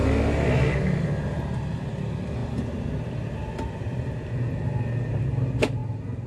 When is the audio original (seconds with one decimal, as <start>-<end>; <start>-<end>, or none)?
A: 0.0-2.4; 4.1-6.3